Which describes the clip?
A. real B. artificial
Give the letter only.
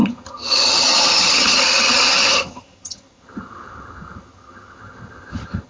B